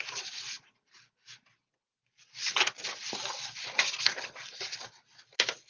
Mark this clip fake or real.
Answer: real